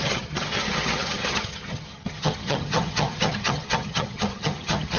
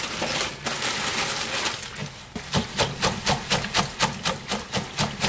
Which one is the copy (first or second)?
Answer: first